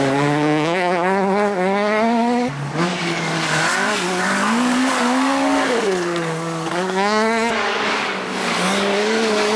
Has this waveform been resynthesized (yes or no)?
yes